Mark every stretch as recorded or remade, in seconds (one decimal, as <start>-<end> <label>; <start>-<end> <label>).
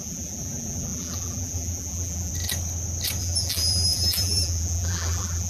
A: 0.0-2.3 remade; 2.3-3.2 recorded; 3.2-5.5 remade